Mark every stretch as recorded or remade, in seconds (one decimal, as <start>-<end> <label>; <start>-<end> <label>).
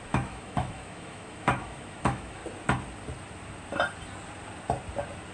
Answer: 0.0-2.4 remade; 2.4-5.3 recorded